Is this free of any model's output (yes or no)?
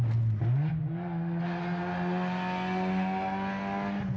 yes